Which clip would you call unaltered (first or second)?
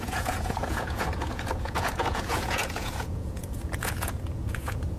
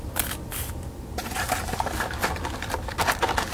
second